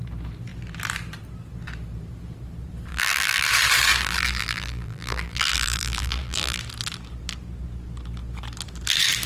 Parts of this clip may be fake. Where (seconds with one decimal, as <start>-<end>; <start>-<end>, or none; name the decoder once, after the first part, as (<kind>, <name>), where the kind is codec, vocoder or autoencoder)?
2.9-3.5 (vocoder, BigVGAN v2); 4.0-6.6